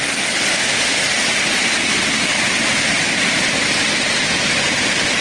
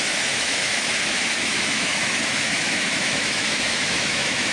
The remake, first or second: second